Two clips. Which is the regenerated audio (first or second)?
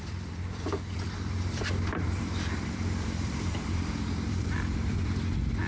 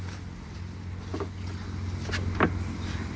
first